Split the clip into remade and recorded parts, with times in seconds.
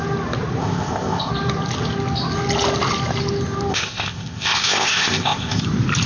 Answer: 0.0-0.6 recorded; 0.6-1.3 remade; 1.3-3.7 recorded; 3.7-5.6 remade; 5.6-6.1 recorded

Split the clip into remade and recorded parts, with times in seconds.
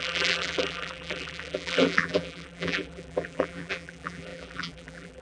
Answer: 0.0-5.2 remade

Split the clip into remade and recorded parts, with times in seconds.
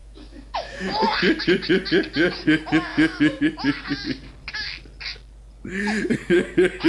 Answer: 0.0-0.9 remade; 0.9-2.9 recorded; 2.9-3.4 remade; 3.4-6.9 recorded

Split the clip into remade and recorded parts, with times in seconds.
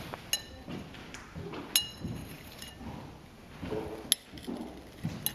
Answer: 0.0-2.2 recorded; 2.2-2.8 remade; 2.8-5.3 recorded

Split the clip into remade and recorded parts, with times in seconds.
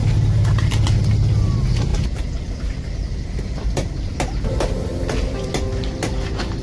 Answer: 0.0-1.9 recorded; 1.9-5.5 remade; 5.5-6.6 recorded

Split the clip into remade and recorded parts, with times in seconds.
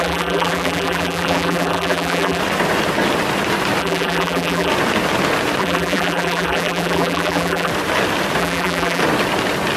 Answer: 0.0-2.4 remade; 2.4-3.8 recorded; 3.8-4.7 remade; 4.7-5.6 recorded; 5.6-7.7 remade; 7.7-8.4 recorded; 8.4-9.0 remade; 9.0-9.8 recorded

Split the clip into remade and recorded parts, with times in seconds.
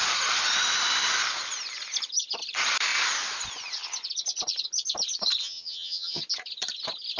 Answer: 0.0-5.4 recorded; 5.4-6.2 remade; 6.2-7.2 recorded